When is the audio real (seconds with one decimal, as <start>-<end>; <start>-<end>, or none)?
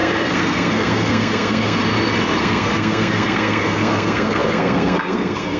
1.8-2.4